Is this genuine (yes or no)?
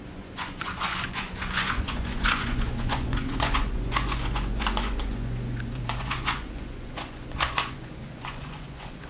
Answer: no